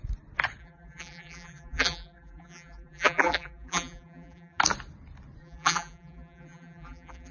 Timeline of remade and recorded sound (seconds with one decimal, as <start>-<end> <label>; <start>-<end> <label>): 0.0-0.6 recorded; 0.6-4.6 remade; 4.6-5.4 recorded; 5.4-7.3 remade

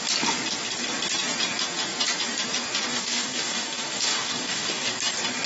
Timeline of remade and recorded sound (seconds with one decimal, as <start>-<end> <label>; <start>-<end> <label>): 0.0-2.9 recorded; 2.9-4.9 remade; 4.9-5.5 recorded

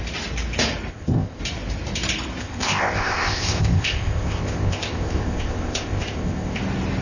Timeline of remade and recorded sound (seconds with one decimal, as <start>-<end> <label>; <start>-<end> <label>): 0.0-0.9 recorded; 0.9-1.4 remade; 1.4-2.4 recorded; 2.4-6.6 remade; 6.6-7.0 recorded